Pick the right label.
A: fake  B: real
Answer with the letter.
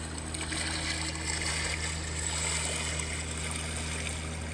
B